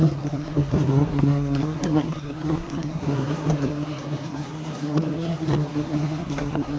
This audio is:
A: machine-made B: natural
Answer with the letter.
A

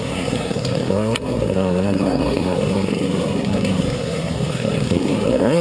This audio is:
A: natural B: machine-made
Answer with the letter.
B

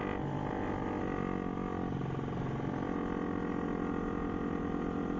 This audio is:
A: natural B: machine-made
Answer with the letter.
A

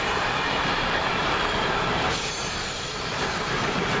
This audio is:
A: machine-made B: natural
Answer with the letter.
A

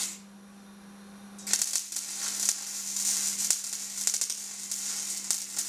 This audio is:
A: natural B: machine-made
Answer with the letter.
A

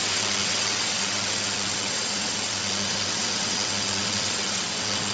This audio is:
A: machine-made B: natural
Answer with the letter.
A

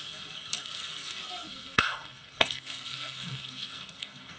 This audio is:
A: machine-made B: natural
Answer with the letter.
A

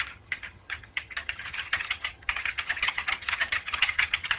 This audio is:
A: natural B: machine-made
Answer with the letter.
B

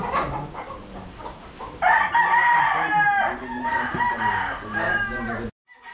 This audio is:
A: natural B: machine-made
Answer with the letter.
A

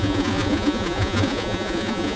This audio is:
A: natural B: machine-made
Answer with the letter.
B